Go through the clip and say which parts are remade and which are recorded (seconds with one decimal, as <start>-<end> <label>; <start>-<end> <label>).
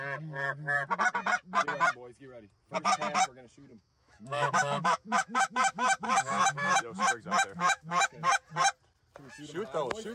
0.0-3.7 recorded; 3.7-8.5 remade; 8.5-10.1 recorded